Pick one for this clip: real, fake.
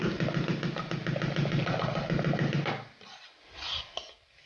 real